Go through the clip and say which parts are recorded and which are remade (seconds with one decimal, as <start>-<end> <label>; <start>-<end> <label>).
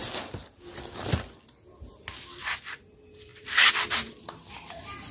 0.0-5.1 recorded